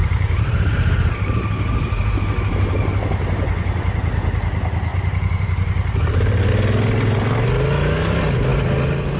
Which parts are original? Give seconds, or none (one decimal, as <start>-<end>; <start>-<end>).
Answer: 2.2-4.9; 6.5-9.2